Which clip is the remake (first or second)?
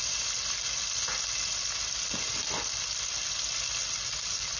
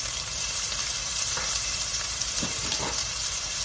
second